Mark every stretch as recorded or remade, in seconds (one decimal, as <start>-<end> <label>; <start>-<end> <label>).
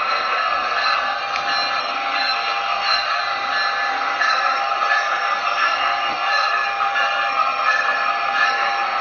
0.0-1.2 remade; 1.2-1.8 recorded; 1.8-3.2 remade; 3.2-3.9 recorded; 3.9-9.0 remade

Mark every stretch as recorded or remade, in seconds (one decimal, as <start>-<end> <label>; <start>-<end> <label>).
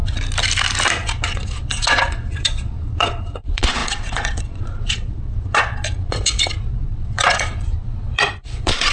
0.0-0.9 recorded; 0.9-8.9 remade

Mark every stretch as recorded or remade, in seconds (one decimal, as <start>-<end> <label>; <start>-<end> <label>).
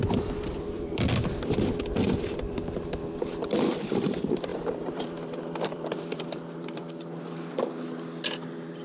0.0-8.8 remade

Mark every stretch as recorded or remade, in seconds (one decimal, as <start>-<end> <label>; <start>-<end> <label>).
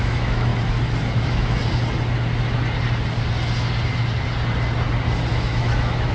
0.0-0.5 remade; 0.5-1.2 recorded; 1.2-1.6 remade; 1.6-5.3 recorded; 5.3-6.1 remade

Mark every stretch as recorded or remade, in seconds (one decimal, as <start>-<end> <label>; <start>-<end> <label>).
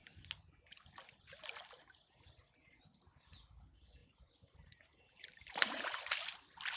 0.0-4.0 recorded; 4.0-6.0 remade; 6.0-6.8 recorded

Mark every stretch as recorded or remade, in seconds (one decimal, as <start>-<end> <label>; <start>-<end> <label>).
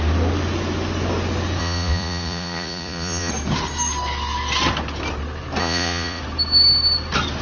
0.0-1.6 recorded; 1.6-3.3 remade; 3.3-5.6 recorded; 5.6-6.2 remade; 6.2-7.4 recorded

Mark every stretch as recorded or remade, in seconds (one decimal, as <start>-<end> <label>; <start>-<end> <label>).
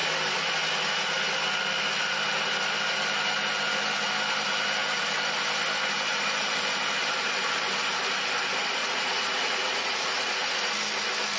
0.0-8.8 recorded; 8.8-10.6 remade; 10.6-11.4 recorded